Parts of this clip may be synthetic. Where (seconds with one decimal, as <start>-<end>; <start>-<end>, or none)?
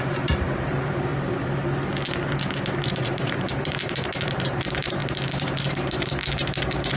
0.0-1.1; 2.9-7.0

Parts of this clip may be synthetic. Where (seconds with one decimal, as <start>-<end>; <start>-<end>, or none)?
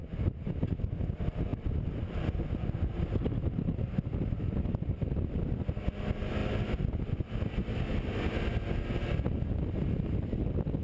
0.0-0.9; 1.5-5.3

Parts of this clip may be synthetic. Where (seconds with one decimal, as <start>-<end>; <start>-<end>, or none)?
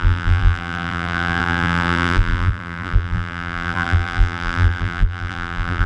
0.0-5.9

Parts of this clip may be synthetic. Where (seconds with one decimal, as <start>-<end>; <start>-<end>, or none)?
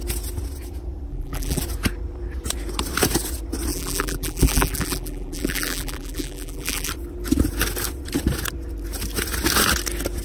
1.1-1.6; 3.7-6.9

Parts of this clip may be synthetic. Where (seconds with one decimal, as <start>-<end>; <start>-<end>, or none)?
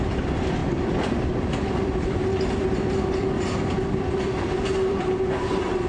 0.0-5.9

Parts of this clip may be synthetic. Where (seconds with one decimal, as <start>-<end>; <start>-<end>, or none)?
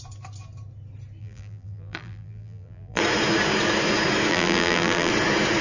1.2-3.0; 4.3-5.1